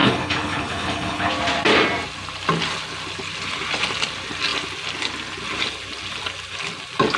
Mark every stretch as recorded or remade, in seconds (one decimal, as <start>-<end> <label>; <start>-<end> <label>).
0.0-1.3 remade; 1.3-7.2 recorded